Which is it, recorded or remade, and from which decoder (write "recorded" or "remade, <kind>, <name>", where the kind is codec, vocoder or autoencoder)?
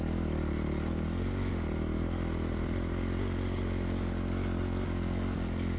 recorded